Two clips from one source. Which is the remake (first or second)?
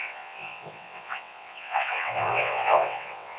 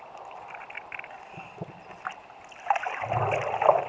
first